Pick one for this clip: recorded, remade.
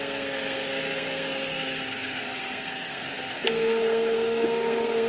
remade